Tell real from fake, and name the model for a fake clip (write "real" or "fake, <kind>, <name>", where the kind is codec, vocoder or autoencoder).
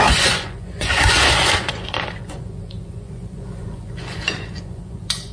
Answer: fake, vocoder, Vocos